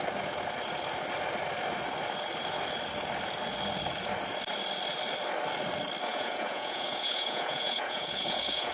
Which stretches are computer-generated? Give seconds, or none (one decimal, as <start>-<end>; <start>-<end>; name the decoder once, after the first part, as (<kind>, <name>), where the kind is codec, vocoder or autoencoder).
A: 6.1-8.7 (vocoder, Vocos)